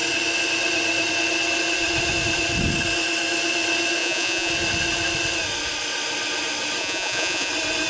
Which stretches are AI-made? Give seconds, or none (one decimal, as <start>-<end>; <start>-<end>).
4.0-4.5; 6.8-7.5